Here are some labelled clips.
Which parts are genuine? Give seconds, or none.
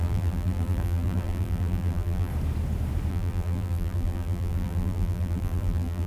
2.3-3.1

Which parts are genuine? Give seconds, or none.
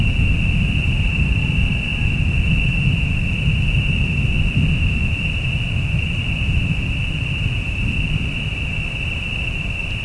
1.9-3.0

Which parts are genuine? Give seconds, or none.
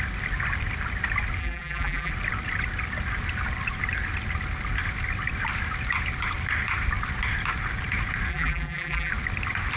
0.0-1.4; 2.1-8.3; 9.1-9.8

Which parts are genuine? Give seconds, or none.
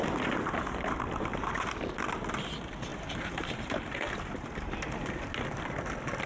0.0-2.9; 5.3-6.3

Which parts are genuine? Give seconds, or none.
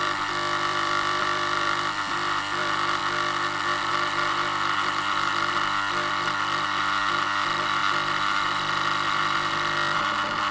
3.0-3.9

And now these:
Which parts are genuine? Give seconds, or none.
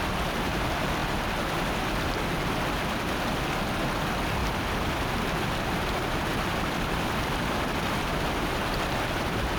0.0-6.3; 8.1-9.6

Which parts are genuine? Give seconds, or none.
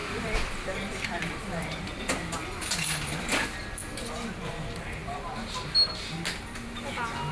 2.0-7.3